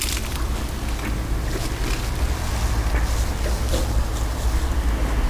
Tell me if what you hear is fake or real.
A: real